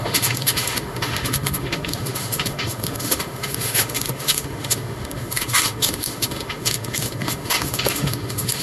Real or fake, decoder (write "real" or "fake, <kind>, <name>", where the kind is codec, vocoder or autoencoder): fake, autoencoder, DAC-VAE